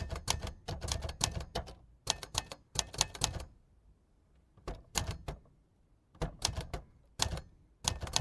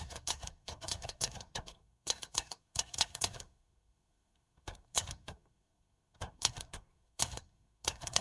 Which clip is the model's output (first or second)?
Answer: second